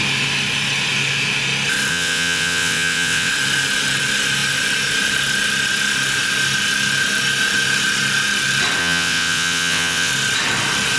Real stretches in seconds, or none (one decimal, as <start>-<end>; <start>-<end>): 0.0-1.9; 3.3-8.8; 10.1-11.0